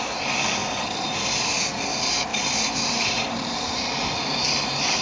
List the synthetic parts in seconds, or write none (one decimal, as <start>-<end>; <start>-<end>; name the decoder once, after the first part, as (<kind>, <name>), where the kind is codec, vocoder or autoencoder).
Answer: 0.6-1.6 (vocoder, BigVGAN v2); 2.3-5.0